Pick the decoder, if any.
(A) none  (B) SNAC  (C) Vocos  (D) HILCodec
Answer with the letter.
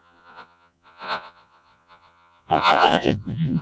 C